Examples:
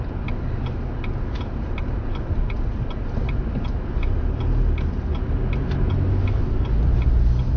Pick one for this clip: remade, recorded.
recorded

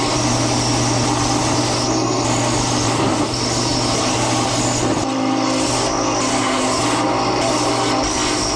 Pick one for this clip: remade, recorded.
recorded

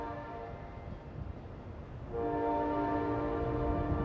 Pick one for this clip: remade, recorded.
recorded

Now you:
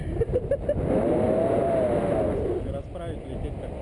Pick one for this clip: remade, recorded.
recorded